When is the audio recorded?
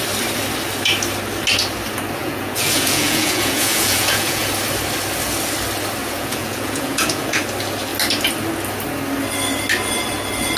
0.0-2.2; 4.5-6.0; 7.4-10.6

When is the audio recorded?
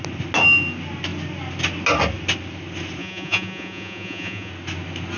0.0-3.0; 4.5-5.2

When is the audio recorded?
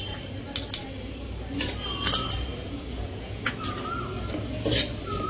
0.0-2.5; 3.5-5.3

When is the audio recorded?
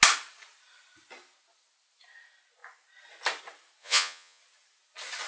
0.0-3.8; 4.4-5.3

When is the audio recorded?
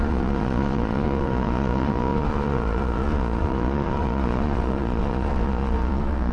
none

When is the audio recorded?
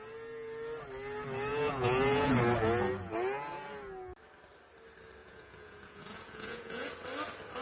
0.0-1.5; 2.3-5.2; 6.9-7.6